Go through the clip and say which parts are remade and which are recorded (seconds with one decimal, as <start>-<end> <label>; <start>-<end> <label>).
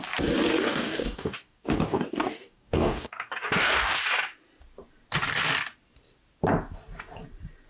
0.0-0.5 recorded; 0.5-4.0 remade; 4.0-7.7 recorded